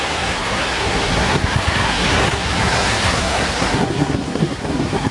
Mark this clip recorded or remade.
remade